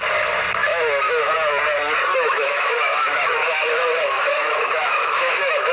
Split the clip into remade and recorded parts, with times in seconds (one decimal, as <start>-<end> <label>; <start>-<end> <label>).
0.0-0.6 recorded; 0.6-1.3 remade; 1.3-2.1 recorded; 2.1-5.7 remade